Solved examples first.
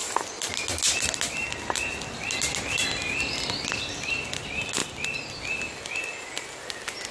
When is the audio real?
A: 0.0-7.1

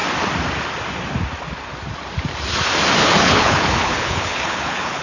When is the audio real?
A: 0.0-3.0

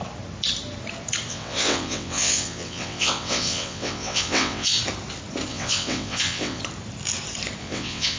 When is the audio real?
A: 0.0-1.3; 4.8-5.5; 6.6-7.6

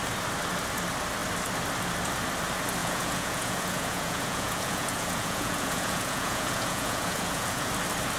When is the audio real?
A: 0.0-2.8; 7.7-8.2